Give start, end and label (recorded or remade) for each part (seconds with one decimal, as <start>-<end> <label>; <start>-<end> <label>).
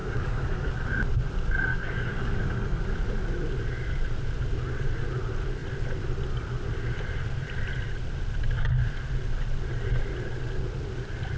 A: 0.0-0.7 remade; 0.7-1.7 recorded; 1.7-2.8 remade; 2.8-11.4 recorded